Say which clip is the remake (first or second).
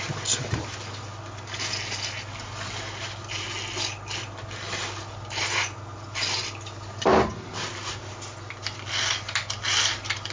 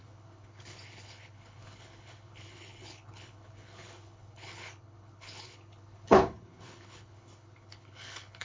second